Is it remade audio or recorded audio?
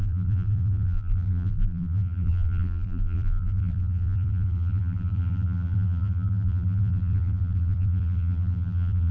remade